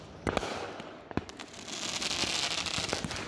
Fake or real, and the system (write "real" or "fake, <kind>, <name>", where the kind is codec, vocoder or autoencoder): real